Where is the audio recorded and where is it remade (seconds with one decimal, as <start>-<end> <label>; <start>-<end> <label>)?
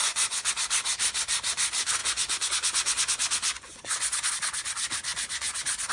0.0-0.5 remade; 0.5-2.0 recorded; 2.0-4.3 remade; 4.3-5.1 recorded; 5.1-5.9 remade